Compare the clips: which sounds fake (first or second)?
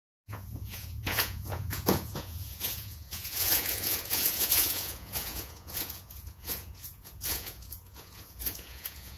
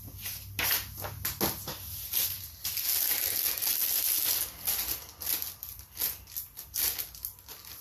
first